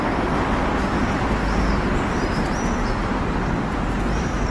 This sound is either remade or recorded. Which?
recorded